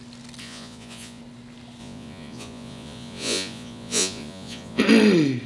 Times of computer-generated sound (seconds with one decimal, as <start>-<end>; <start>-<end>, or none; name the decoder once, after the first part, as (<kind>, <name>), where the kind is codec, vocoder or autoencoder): 0.4-1.2 (vocoder, Vocos); 1.8-4.8